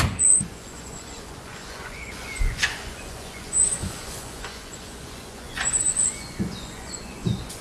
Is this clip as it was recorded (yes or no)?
no